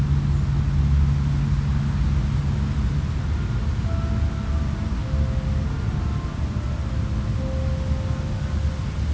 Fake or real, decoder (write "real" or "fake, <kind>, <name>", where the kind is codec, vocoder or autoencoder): real